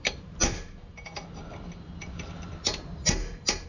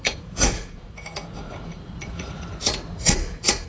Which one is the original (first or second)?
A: first